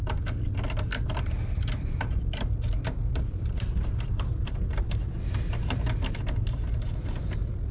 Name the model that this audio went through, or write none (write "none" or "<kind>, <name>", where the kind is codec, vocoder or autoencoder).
none